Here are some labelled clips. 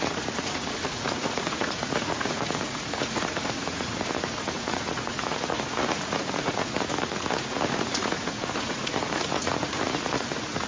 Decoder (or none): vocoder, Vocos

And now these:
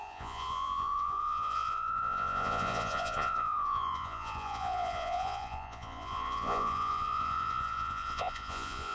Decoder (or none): vocoder, Vocos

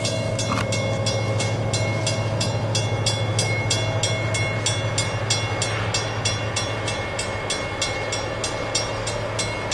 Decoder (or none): none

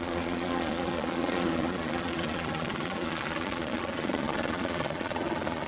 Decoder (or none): vocoder, Vocos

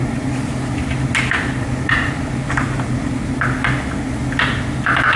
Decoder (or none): none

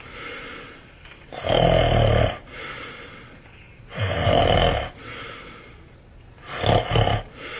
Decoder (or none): none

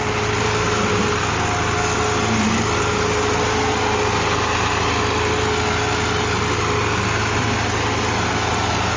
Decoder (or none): none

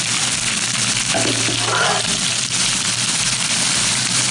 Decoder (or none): none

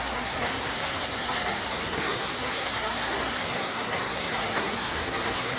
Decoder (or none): codec, SNAC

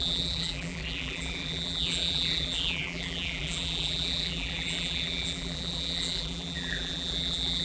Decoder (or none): vocoder, BigVGAN v2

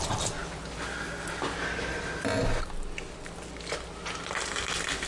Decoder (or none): none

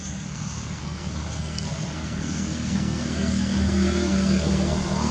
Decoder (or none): codec, SNAC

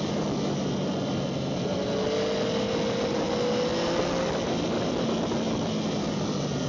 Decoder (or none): none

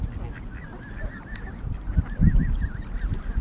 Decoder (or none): none